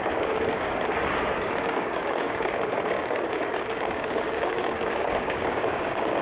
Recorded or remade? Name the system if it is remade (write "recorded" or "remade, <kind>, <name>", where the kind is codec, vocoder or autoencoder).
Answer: remade, codec, DAC